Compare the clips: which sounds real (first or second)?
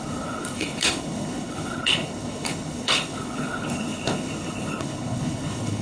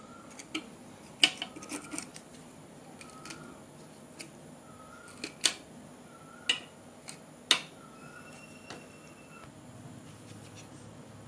second